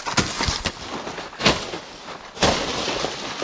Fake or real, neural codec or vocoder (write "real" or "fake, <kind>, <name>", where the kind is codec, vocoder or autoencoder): real